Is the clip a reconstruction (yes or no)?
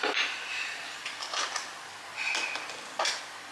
no